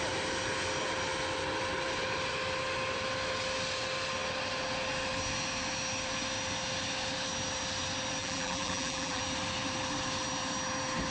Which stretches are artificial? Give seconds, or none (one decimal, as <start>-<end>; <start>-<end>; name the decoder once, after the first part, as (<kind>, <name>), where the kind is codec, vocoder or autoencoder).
8.2-9.2 (vocoder, BigVGAN v2)